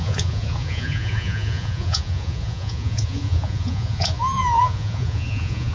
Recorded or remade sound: remade